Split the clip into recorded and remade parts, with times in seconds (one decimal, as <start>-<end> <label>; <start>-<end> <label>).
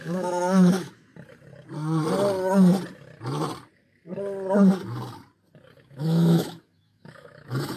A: 0.0-1.1 remade; 1.1-5.8 recorded; 5.8-7.8 remade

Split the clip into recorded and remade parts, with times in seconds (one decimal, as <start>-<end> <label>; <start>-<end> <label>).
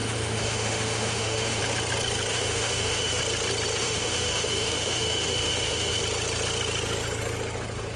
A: 0.0-1.6 remade; 1.6-2.3 recorded; 2.3-3.2 remade; 3.2-3.8 recorded; 3.8-6.0 remade; 6.0-8.0 recorded